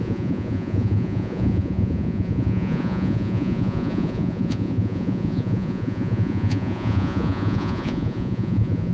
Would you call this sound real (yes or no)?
no